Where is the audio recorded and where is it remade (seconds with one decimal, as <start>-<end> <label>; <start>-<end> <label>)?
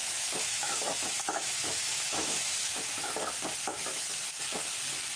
0.0-3.1 remade; 3.1-3.7 recorded; 3.7-4.4 remade; 4.4-5.2 recorded